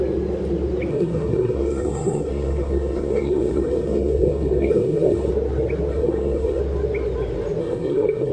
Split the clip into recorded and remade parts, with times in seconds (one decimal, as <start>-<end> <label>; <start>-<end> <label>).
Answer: 0.0-0.9 recorded; 0.9-5.3 remade; 5.3-5.9 recorded; 5.9-6.6 remade; 6.6-7.6 recorded; 7.6-8.3 remade

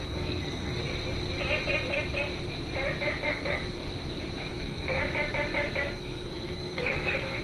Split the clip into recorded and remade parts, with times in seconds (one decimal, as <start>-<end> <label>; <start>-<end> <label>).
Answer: 0.0-0.8 remade; 0.8-3.3 recorded; 3.3-3.9 remade; 3.9-4.5 recorded; 4.5-5.0 remade; 5.0-5.9 recorded; 5.9-7.4 remade

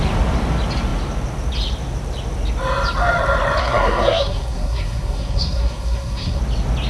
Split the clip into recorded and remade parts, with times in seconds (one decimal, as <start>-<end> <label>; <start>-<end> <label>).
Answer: 0.0-3.6 recorded; 3.6-6.4 remade; 6.4-6.9 recorded

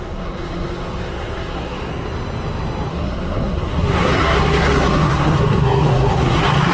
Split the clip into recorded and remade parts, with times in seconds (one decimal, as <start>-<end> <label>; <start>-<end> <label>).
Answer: 0.0-1.9 remade; 1.9-2.9 recorded; 2.9-6.7 remade